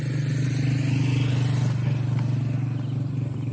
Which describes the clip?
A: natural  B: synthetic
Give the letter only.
A